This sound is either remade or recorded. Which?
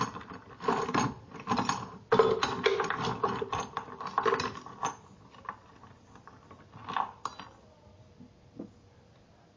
recorded